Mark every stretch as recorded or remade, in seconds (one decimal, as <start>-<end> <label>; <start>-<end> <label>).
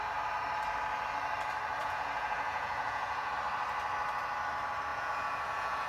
0.0-1.8 recorded; 1.8-3.3 remade; 3.3-4.9 recorded; 4.9-5.9 remade